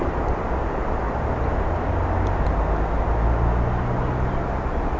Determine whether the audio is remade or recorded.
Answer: recorded